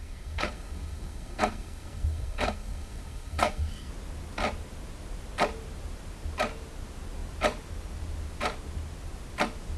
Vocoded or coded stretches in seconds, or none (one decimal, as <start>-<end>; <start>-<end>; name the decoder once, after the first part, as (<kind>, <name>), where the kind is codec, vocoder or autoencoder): 0.0-3.9 (codec, SNAC)